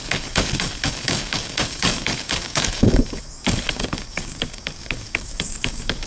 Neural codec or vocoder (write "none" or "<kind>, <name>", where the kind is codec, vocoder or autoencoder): codec, DAC